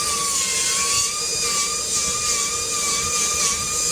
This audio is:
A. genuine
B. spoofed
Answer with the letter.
B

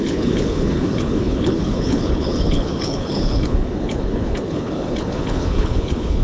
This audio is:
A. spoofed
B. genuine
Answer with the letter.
A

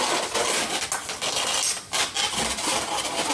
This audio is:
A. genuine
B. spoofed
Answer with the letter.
A